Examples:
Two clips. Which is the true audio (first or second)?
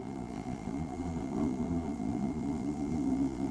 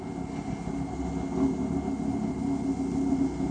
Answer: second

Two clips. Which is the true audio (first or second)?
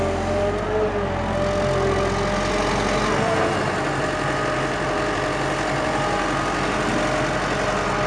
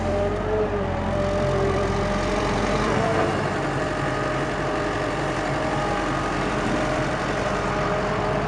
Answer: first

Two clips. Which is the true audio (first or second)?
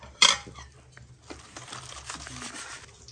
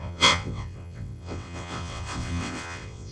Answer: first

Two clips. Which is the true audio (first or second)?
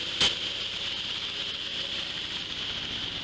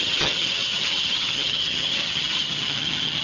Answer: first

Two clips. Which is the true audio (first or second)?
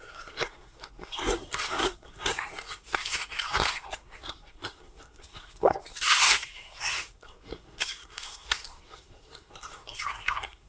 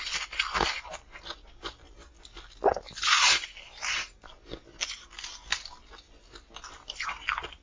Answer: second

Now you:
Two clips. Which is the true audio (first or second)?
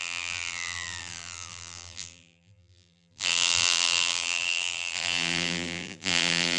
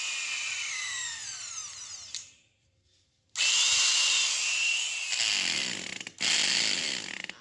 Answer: second